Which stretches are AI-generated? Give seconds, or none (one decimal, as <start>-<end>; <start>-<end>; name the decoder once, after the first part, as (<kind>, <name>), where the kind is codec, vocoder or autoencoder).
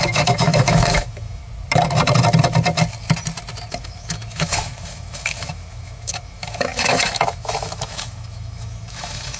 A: 0.0-1.4 (autoencoder, DAC-VAE); 3.7-9.4